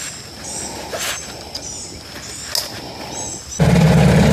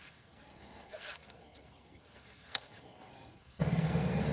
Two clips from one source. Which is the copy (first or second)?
second